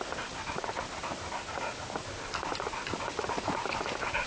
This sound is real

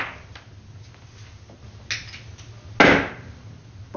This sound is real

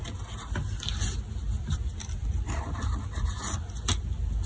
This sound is real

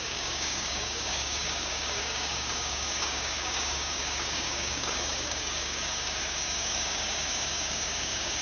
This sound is fake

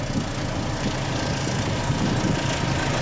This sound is real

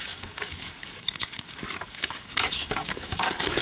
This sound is fake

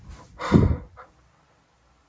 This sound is real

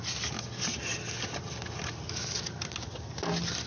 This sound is real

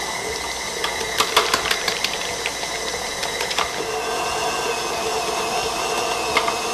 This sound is real